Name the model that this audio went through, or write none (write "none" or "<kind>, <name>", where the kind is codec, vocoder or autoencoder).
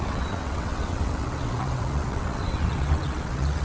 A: vocoder, WaveNeXt